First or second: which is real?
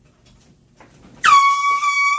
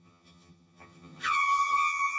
first